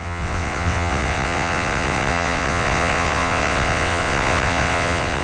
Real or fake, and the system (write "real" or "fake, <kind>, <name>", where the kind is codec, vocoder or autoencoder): fake, vocoder, WaveNeXt